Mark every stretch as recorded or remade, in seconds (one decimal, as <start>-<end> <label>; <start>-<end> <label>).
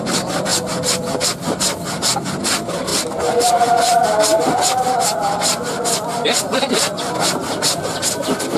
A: 0.0-8.6 recorded